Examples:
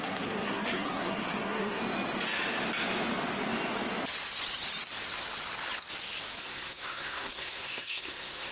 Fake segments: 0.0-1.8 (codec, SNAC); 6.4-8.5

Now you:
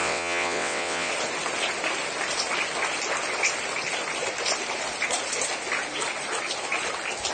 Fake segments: 0.0-1.1 (vocoder, WaveNeXt)

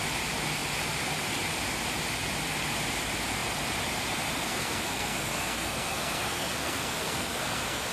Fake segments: 4.4-7.9 (codec, SNAC)